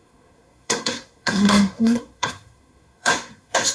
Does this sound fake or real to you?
fake